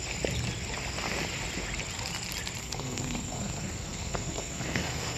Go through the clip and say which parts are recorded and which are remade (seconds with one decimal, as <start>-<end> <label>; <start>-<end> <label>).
0.0-2.6 recorded; 2.6-5.2 remade